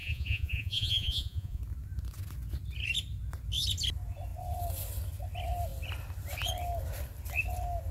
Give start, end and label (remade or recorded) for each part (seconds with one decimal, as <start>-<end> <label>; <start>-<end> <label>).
0.0-1.6 remade; 1.6-7.9 recorded